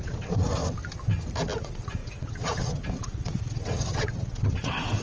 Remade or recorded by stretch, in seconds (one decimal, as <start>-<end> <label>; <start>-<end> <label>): 0.0-0.6 remade; 0.6-1.6 recorded; 1.6-5.0 remade